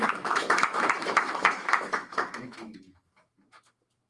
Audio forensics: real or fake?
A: fake